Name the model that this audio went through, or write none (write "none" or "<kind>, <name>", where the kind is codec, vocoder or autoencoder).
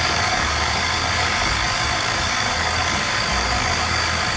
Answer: codec, DAC